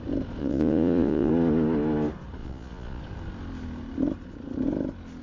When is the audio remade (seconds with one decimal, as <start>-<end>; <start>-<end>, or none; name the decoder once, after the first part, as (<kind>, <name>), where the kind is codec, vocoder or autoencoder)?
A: 0.4-1.3 (vocoder, Vocos); 2.4-3.0